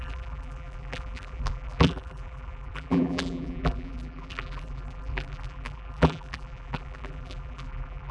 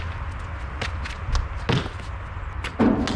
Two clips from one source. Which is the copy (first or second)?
first